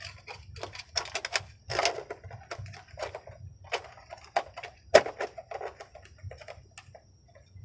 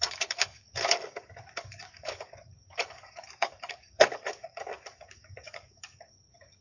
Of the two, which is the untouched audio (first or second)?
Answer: first